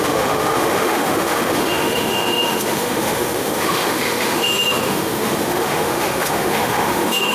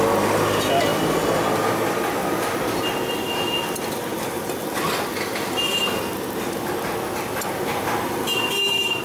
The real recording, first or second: second